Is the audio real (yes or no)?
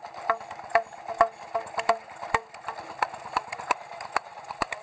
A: yes